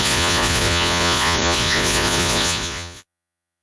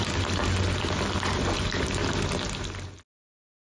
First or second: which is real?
second